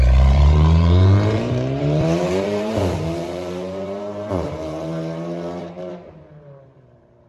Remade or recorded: remade